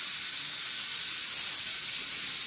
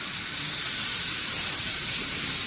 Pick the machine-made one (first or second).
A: second